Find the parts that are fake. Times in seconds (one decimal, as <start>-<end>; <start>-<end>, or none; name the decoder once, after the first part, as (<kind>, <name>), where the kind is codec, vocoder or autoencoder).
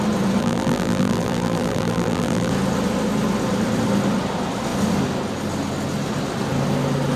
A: 0.4-2.5 (vocoder, BigVGAN v2)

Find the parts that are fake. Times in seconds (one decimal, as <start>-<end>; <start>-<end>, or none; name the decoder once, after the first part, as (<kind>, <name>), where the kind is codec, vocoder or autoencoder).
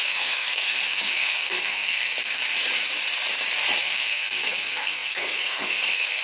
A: 0.0-2.4 (codec, SNAC); 3.8-6.2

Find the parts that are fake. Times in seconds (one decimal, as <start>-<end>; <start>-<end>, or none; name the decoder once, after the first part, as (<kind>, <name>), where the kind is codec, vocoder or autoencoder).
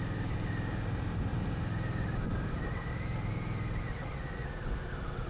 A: none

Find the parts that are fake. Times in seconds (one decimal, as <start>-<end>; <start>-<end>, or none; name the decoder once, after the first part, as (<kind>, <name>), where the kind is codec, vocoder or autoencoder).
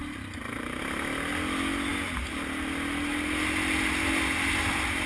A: 0.0-0.8 (vocoder, BigVGAN v2)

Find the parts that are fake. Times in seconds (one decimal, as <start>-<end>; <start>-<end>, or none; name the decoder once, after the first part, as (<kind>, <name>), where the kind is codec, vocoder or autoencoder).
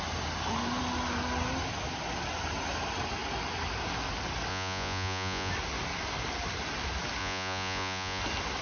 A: 4.5-5.5 (vocoder, Vocos); 7.2-8.2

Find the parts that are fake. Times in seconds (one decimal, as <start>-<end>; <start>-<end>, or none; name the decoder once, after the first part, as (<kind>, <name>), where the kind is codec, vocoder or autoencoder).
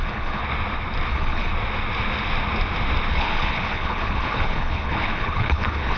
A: 0.0-0.4 (codec, HILCodec); 1.1-1.5; 3.1-6.0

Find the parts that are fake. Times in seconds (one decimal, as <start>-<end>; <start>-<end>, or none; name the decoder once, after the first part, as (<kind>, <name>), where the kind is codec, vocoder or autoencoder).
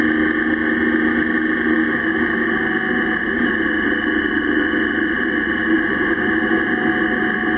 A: none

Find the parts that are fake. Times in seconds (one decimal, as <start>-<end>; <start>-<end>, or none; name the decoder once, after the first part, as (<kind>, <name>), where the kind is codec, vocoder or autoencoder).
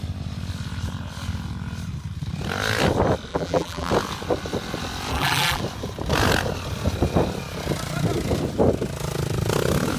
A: 3.3-3.9 (vocoder, BigVGAN v2); 5.1-5.6